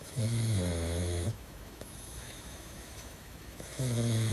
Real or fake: fake